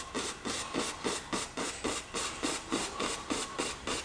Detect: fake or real real